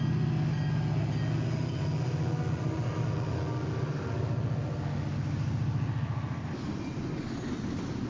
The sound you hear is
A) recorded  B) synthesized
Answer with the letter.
A